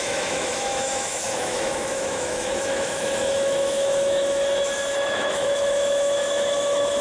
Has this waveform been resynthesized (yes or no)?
yes